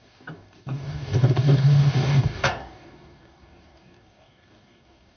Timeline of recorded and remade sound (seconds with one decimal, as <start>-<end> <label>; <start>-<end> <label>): 0.0-5.2 remade